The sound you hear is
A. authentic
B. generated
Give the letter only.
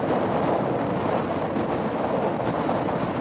A